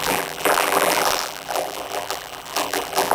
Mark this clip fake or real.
fake